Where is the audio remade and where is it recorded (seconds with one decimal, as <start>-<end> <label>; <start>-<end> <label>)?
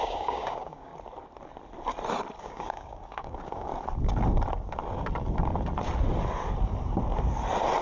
0.0-0.9 remade; 0.9-2.4 recorded; 2.4-3.7 remade; 3.7-7.8 recorded